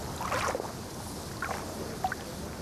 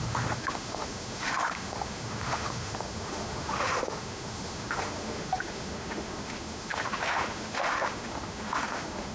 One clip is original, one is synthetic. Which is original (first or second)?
first